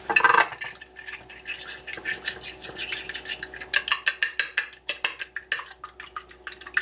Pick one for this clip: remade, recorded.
recorded